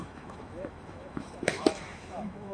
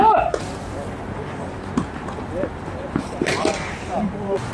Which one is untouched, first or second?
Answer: second